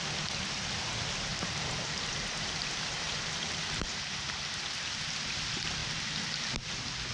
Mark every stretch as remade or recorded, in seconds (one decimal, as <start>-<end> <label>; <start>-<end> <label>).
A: 0.0-1.3 recorded; 1.3-4.6 remade; 4.6-5.8 recorded; 5.8-6.5 remade; 6.5-7.1 recorded